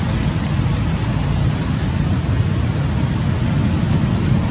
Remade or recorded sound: recorded